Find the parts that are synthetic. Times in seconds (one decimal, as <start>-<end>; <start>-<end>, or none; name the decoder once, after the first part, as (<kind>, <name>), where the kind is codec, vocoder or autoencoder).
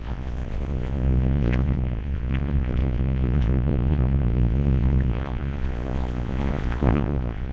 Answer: 0.0-7.5 (vocoder, Vocos)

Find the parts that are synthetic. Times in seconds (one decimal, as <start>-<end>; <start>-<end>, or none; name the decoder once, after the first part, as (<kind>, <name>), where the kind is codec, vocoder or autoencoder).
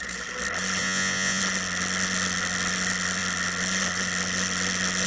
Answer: 0.8-1.4 (vocoder, Vocos)